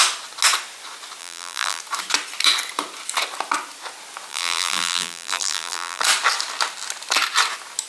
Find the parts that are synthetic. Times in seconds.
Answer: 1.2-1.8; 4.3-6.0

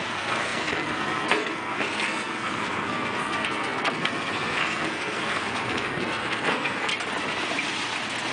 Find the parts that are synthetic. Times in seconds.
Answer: 0.0-6.9

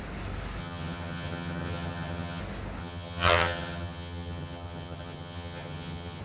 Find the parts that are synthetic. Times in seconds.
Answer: 0.6-2.4; 2.8-6.2

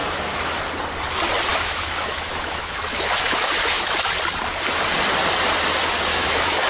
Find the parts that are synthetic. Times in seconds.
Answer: 0.0-0.6; 1.5-4.1; 6.1-6.7

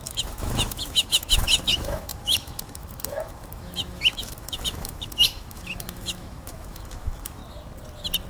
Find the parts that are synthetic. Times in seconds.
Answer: 0.0-7.4

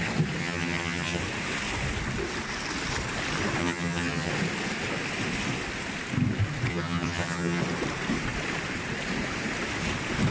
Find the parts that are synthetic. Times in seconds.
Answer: 0.4-1.2; 3.6-4.3; 6.7-7.6